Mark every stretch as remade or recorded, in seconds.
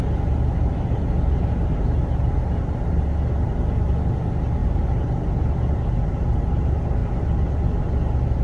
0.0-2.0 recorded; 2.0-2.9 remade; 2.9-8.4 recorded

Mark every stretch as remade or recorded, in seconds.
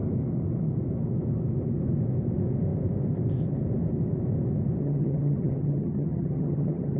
0.0-4.8 recorded; 4.8-7.0 remade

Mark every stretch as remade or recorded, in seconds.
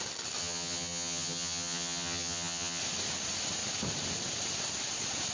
0.0-0.4 recorded; 0.4-2.8 remade; 2.8-5.3 recorded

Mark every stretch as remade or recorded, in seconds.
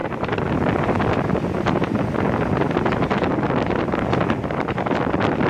0.0-5.5 recorded